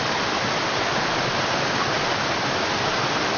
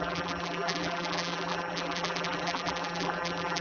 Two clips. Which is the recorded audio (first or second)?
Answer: first